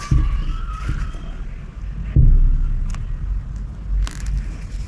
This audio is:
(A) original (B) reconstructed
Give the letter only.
A